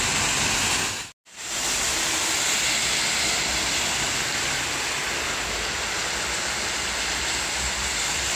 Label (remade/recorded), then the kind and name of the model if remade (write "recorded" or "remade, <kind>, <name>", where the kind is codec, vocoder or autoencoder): recorded